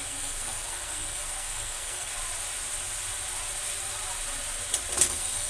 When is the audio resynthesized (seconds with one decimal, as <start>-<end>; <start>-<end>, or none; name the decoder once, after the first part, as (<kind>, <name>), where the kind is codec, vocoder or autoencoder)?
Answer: 0.0-2.1 (codec, SNAC); 5.0-5.5